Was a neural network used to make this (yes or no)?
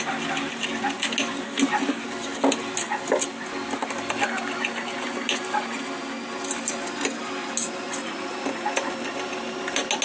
no